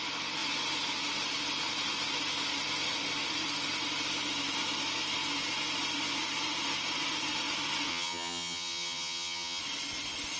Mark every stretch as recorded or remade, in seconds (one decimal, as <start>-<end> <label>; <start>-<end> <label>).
0.0-7.9 recorded; 7.9-9.6 remade; 9.6-10.4 recorded